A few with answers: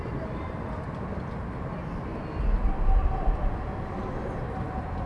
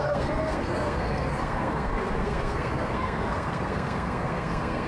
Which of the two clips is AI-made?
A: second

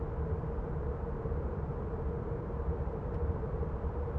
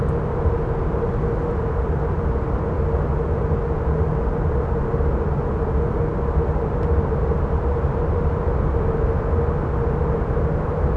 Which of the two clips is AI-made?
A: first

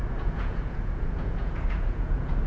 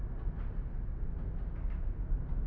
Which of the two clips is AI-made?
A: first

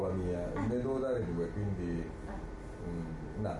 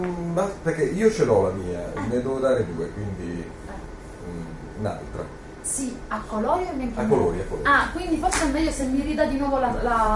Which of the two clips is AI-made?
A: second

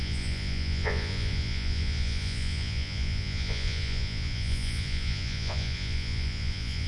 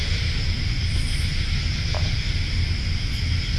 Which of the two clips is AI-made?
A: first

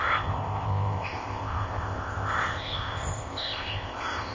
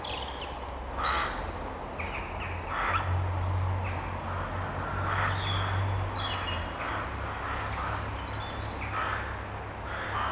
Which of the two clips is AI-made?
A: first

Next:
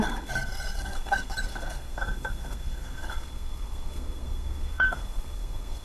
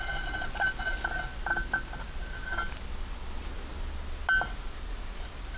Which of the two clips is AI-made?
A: first